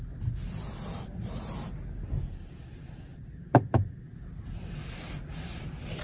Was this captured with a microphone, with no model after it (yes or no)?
yes